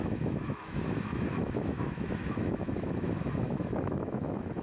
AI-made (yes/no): yes